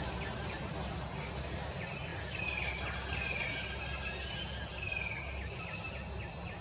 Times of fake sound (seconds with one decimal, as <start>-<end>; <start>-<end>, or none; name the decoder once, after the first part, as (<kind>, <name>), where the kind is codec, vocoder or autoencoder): none